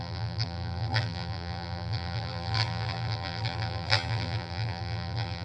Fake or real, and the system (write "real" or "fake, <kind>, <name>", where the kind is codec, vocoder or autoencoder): fake, vocoder, BigVGAN v2